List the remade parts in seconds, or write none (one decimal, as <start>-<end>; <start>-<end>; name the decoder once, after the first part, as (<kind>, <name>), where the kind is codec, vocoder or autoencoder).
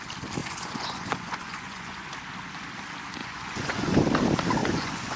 0.4-2.1 (vocoder, Vocos); 3.2-4.0; 4.6-5.2